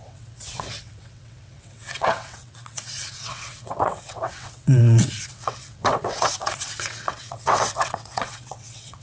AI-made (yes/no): yes